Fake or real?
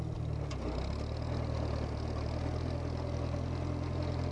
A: real